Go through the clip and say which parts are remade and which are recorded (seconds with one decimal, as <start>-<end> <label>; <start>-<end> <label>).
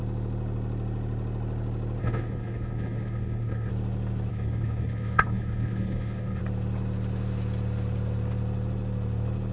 0.0-2.0 recorded; 2.0-3.7 remade; 3.7-4.3 recorded; 4.3-6.4 remade; 6.4-9.5 recorded